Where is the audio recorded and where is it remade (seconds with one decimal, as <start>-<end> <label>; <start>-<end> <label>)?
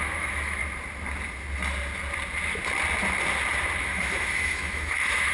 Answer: 0.0-0.6 remade; 0.6-3.8 recorded; 3.8-5.3 remade